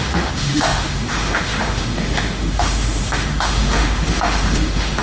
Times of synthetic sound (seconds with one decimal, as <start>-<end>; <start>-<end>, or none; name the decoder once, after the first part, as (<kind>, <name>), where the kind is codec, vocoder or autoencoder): 0.0-5.0 (autoencoder, DAC-VAE)